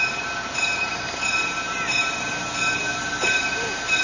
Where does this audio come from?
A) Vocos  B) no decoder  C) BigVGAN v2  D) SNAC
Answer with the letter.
B